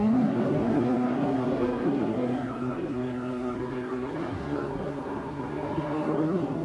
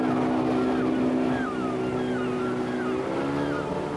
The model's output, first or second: first